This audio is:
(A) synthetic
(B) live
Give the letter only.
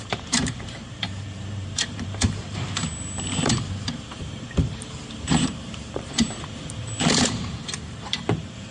A